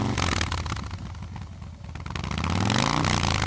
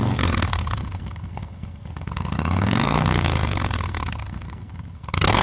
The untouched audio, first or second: first